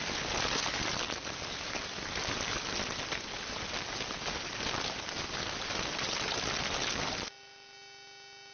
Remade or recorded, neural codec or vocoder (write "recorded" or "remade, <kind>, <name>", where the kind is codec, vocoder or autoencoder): recorded